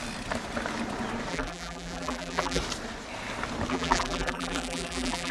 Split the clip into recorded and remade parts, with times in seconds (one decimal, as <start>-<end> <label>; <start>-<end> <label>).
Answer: 0.0-1.3 recorded; 1.3-2.6 remade; 2.6-3.7 recorded; 3.7-5.3 remade